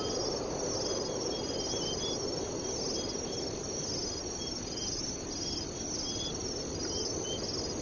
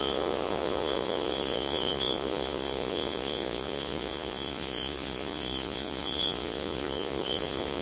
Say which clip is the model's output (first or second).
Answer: second